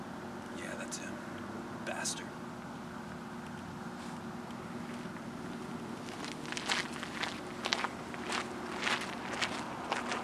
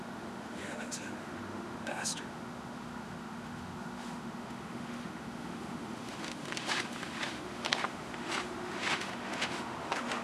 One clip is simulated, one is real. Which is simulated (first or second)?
second